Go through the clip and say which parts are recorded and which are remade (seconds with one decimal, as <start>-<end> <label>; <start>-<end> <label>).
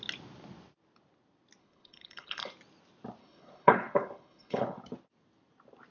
0.0-1.6 recorded; 1.6-2.5 remade; 2.5-3.2 recorded; 3.2-4.8 remade; 4.8-5.9 recorded